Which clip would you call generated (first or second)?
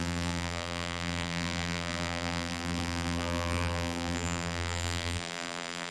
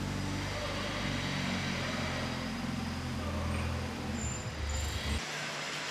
first